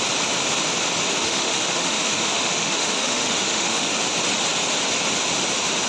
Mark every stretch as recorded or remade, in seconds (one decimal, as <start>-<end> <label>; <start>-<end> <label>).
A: 0.0-1.2 recorded; 1.2-3.9 remade; 3.9-5.9 recorded